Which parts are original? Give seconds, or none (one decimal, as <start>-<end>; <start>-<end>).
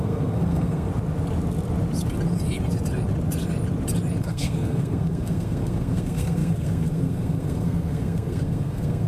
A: 0.9-4.2